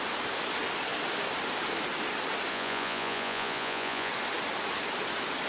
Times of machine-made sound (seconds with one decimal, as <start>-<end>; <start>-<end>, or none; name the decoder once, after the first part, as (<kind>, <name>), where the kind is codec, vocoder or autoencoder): 2.5-4.1 (vocoder, Vocos)